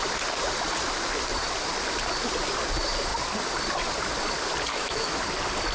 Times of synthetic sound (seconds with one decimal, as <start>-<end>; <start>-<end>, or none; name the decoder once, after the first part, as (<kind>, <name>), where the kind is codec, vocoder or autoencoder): 4.7-5.2 (autoencoder, DAC-VAE)